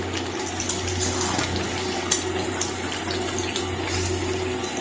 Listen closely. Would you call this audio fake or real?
real